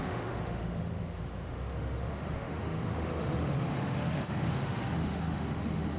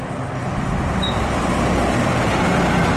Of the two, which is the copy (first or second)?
first